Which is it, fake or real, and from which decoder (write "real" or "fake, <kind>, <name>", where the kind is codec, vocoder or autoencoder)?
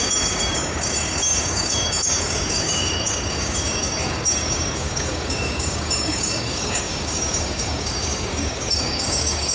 fake, codec, DAC